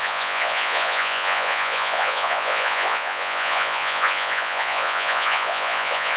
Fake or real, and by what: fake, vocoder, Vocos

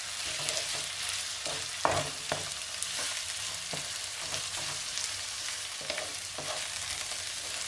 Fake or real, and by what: real